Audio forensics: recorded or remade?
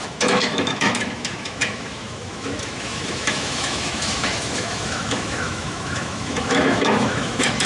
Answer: remade